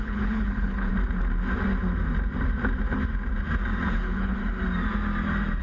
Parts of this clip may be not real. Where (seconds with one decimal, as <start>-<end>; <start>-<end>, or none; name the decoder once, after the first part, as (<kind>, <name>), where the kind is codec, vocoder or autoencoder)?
0.0-0.9 (codec, HILCodec); 3.9-4.4